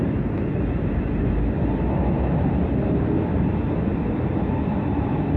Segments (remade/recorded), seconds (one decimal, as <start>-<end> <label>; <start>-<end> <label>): 0.0-3.9 recorded; 3.9-4.8 remade; 4.8-5.4 recorded